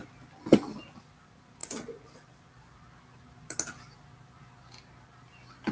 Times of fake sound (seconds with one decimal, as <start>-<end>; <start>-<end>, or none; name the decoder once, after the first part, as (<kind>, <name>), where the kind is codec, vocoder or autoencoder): none